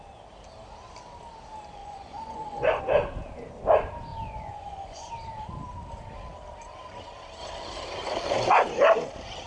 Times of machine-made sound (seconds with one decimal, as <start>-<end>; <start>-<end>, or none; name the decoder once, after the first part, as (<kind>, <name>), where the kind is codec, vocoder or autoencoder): 1.8-2.8 (vocoder, Vocos); 4.1-5.1